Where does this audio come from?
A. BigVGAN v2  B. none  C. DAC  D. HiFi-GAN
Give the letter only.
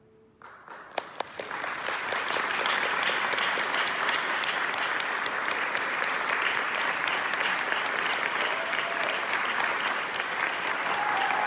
B